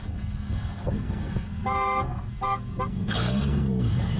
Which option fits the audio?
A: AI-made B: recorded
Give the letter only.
A